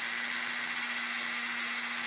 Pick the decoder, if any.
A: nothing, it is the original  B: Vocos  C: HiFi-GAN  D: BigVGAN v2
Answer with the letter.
A